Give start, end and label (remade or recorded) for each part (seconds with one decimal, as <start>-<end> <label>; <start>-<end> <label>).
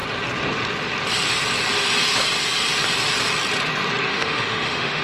0.0-4.1 recorded; 4.1-5.0 remade